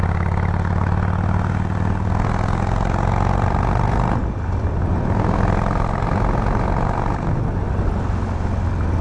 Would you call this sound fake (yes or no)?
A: no